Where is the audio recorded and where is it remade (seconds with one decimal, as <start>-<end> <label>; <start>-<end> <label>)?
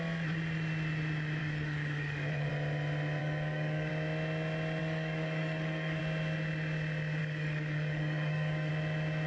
0.0-1.4 recorded; 1.4-2.5 remade; 2.5-3.2 recorded; 3.2-3.9 remade; 3.9-4.8 recorded; 4.8-6.0 remade; 6.0-7.2 recorded; 7.2-8.7 remade; 8.7-9.3 recorded